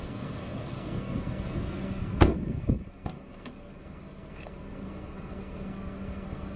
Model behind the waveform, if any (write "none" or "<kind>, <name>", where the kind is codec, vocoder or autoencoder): codec, SNAC